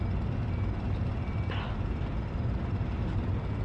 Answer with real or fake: real